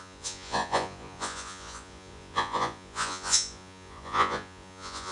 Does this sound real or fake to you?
fake